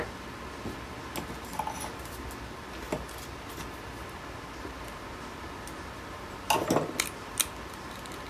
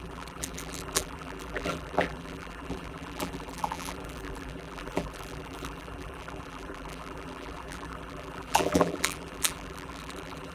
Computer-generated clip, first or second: second